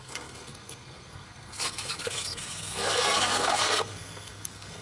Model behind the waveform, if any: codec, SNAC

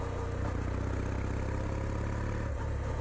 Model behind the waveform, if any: none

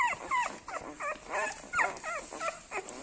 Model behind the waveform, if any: none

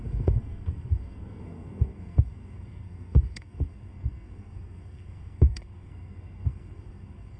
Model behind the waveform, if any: codec, SNAC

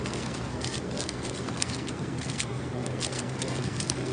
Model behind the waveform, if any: codec, SNAC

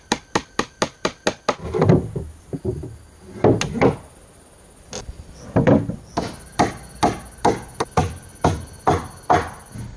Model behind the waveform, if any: none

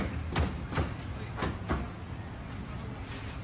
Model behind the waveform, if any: none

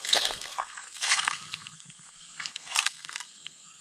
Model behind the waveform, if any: codec, SNAC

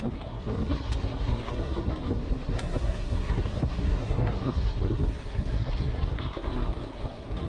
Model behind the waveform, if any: codec, SNAC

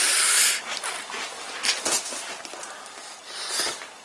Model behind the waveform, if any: none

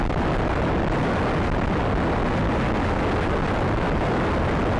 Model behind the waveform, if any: none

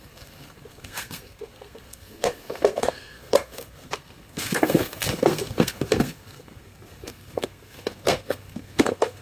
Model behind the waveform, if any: codec, SNAC